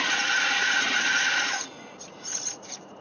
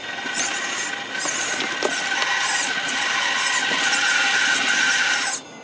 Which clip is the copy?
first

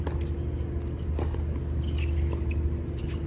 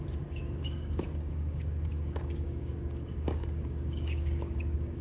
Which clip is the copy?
second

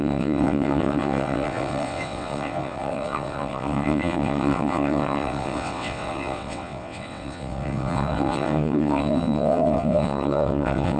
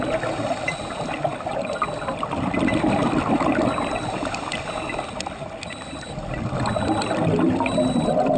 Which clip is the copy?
first